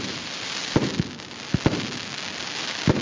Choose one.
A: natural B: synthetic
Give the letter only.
A